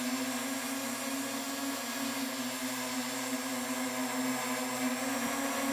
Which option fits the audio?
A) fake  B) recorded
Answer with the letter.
B